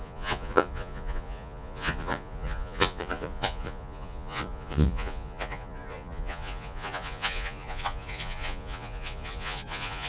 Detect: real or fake fake